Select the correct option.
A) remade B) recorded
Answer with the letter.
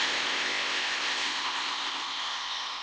A